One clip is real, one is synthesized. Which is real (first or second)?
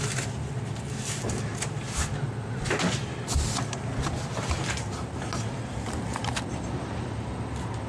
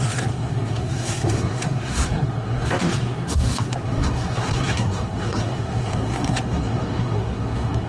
first